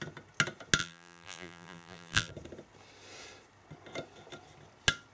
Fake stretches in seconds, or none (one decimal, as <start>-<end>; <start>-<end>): 0.8-2.3